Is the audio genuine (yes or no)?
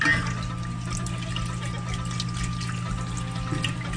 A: yes